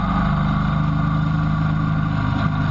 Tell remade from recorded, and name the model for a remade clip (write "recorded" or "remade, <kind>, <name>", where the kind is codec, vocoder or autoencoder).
recorded